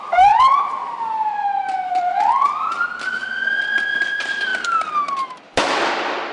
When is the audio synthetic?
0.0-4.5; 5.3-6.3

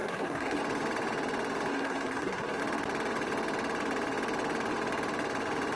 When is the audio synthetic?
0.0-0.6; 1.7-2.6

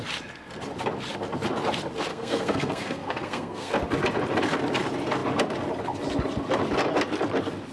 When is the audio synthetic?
2.1-3.7

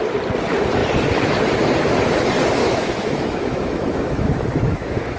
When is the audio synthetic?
2.6-5.2

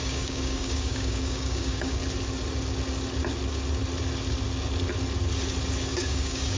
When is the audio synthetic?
0.0-2.0; 5.9-6.6